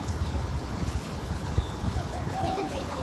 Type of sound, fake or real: fake